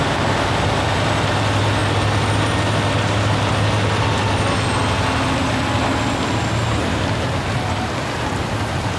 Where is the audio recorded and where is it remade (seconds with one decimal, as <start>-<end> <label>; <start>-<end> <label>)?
0.0-6.6 recorded; 6.6-9.0 remade